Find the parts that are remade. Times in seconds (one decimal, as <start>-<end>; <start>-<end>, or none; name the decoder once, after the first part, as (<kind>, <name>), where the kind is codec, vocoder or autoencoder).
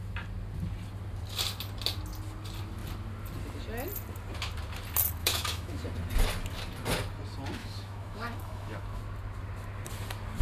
5.2-5.8 (autoencoder, DAC-VAE); 7.6-9.0